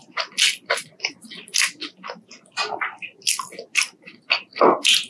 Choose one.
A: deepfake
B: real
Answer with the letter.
B